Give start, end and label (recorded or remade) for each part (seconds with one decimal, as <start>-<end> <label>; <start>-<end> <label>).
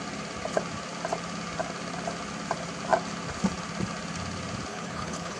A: 0.0-4.7 recorded; 4.7-5.4 remade